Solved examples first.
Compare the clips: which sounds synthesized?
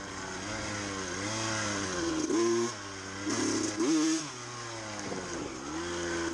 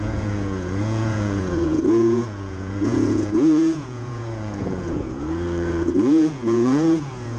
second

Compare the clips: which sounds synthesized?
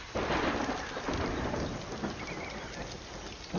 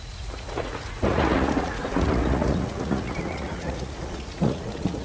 second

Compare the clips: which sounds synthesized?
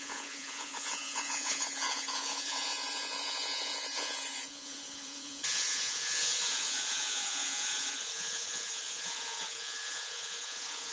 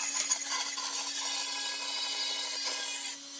first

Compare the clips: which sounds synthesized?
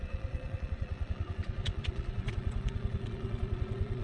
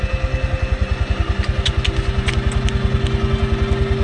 first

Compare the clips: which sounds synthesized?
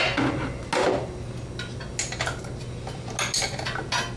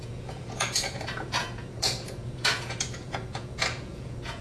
second